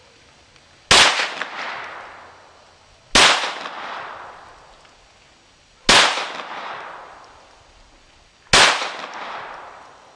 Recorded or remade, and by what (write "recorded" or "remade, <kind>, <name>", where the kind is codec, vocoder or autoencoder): recorded